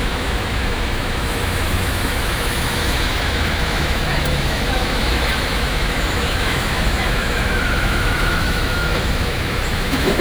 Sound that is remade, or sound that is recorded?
remade